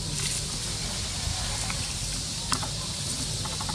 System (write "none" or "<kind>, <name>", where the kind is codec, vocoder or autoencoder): none